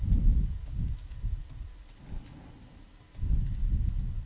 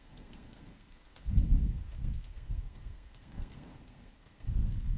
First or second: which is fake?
second